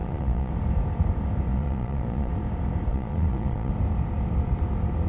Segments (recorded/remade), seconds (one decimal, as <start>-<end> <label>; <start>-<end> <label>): 0.0-0.5 remade; 0.5-1.5 recorded; 1.5-2.3 remade; 2.3-2.9 recorded; 2.9-3.7 remade; 3.7-5.1 recorded